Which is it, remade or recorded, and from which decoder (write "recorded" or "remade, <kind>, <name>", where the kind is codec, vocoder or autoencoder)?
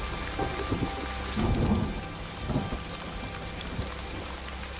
recorded